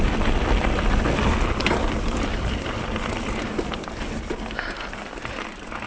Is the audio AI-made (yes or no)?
no